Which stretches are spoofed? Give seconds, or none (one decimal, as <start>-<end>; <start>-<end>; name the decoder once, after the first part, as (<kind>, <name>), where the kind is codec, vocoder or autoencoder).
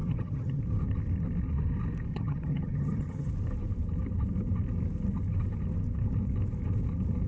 0.0-0.6 (vocoder, HiFi-GAN); 2.1-3.3